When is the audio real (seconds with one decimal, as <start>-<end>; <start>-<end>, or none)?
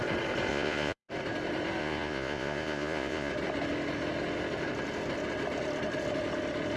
0.0-0.5; 1.1-1.8; 3.3-6.8